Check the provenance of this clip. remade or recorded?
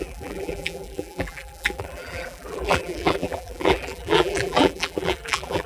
remade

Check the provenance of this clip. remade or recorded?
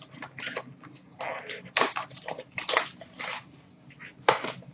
recorded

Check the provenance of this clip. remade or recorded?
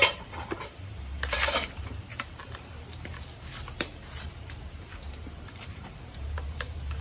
remade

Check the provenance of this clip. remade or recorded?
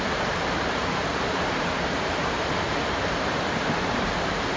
remade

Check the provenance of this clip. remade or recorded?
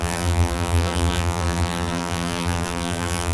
remade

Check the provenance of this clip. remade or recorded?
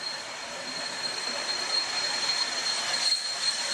recorded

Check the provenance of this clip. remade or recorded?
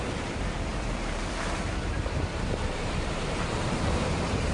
remade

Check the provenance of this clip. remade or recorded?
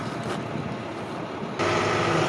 recorded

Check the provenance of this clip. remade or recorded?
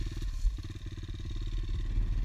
recorded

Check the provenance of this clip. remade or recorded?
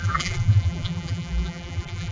remade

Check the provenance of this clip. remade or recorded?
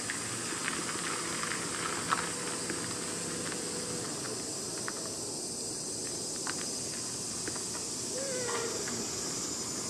recorded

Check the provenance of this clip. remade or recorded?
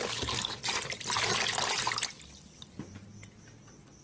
recorded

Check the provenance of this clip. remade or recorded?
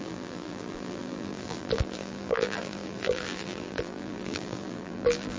remade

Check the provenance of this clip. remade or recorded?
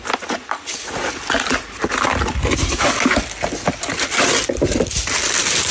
recorded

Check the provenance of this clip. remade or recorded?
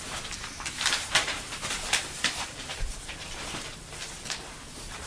remade